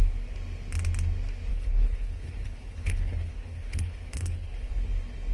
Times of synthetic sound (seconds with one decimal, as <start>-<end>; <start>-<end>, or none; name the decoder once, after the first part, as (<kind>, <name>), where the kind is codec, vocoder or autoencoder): 1.5-4.7 (codec, HILCodec)